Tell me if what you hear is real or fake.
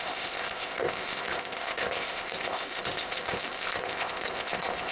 fake